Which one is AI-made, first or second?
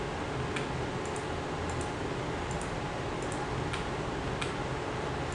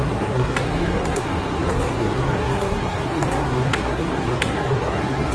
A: second